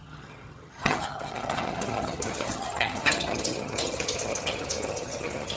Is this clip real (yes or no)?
no